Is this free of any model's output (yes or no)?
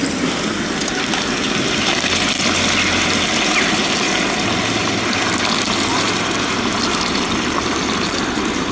yes